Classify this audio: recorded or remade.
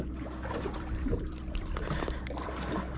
remade